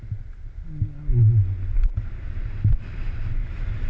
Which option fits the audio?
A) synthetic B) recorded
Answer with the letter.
B